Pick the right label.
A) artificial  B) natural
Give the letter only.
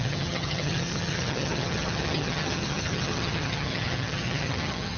A